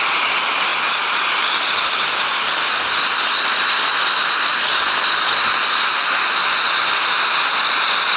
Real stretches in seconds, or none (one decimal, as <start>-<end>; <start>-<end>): 0.0-8.2